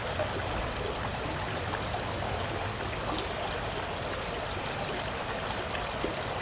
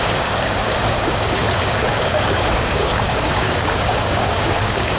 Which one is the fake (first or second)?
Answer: second